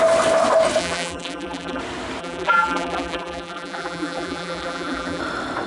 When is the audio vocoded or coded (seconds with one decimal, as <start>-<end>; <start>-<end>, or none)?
0.8-1.8; 2.2-5.2